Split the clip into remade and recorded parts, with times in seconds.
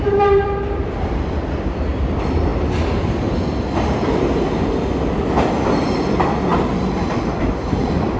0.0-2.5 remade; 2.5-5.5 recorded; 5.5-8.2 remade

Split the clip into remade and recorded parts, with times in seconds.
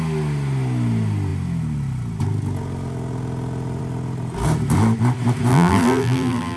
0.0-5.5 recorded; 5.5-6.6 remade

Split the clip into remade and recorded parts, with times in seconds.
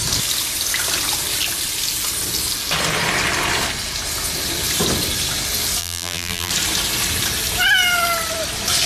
0.0-5.8 recorded; 5.8-6.5 remade; 6.5-8.9 recorded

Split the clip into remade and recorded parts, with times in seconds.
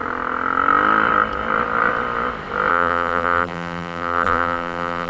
0.0-2.7 recorded; 2.7-5.1 remade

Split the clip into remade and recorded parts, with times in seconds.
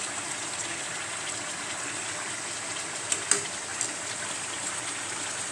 0.0-3.7 recorded; 3.7-5.0 remade; 5.0-5.5 recorded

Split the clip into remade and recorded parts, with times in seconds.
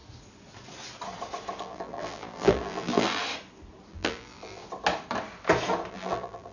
0.0-1.6 recorded; 1.6-3.2 remade; 3.2-3.9 recorded; 3.9-4.6 remade; 4.6-5.9 recorded; 5.9-6.5 remade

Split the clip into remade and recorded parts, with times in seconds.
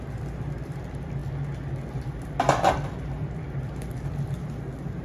0.0-1.2 remade; 1.2-2.7 recorded; 2.7-5.0 remade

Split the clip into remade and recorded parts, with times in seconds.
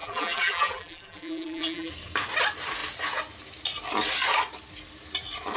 0.0-1.9 remade; 1.9-5.6 recorded